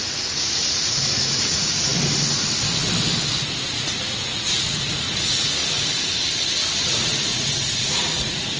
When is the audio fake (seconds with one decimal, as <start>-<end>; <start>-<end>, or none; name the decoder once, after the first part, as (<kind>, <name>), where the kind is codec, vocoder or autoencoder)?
0.0-1.9 (vocoder, Vocos); 3.6-5.6; 6.8-8.6